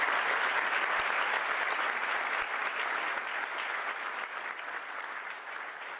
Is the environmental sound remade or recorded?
recorded